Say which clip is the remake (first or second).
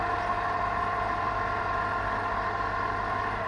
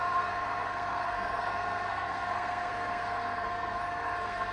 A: second